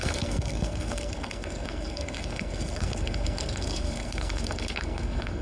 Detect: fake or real fake